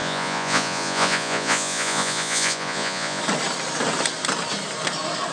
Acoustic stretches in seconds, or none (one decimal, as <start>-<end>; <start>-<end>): 3.2-5.3